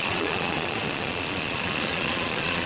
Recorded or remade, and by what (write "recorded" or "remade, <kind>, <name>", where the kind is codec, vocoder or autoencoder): remade, vocoder, Vocos